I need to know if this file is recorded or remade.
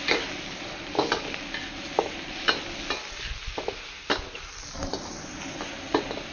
recorded